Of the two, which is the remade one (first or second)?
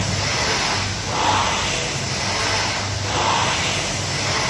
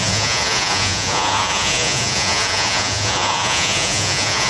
second